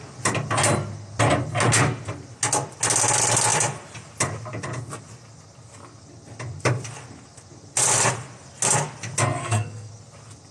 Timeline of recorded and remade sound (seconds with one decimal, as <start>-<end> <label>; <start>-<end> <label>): 0.0-9.4 recorded; 9.4-9.9 remade; 9.9-10.5 recorded